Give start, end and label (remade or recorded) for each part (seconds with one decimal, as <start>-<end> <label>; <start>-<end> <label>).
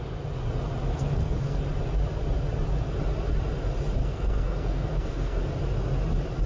0.0-0.9 recorded; 0.9-1.6 remade; 1.6-4.0 recorded; 4.0-5.4 remade; 5.4-6.5 recorded